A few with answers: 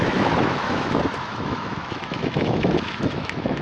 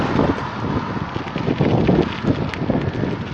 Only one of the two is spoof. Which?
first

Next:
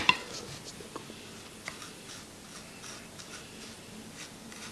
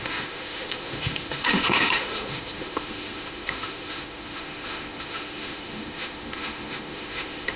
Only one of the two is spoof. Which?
second